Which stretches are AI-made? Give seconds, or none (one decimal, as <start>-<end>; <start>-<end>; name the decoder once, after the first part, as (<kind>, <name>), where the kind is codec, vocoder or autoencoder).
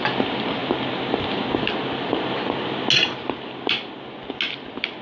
none